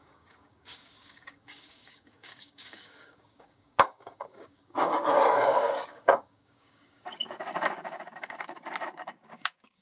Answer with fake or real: fake